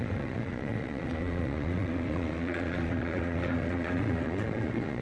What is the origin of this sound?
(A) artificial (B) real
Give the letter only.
A